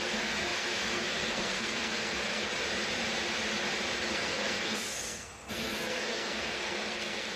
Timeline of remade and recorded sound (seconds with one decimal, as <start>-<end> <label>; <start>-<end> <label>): 0.0-2.5 remade; 2.5-4.1 recorded; 4.1-7.4 remade